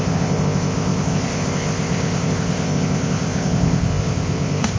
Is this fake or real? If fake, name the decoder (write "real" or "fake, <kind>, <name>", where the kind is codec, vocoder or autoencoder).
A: fake, codec, ZipCodec